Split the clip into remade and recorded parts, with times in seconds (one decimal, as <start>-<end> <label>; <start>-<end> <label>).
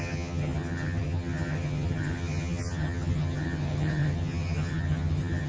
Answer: 0.0-5.5 remade